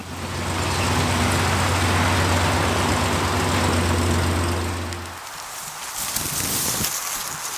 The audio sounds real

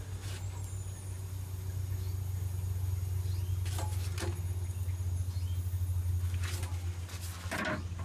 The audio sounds real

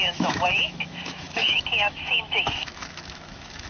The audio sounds fake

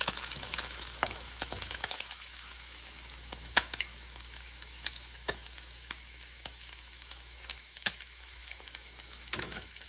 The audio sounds fake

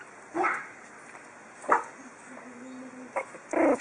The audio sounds real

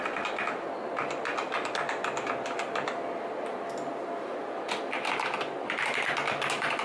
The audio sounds real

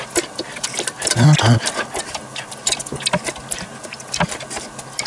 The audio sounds real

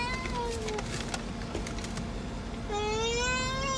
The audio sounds real